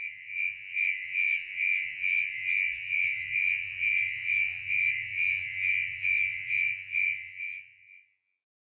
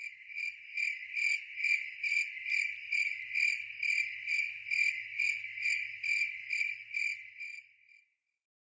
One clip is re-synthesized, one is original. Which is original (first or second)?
second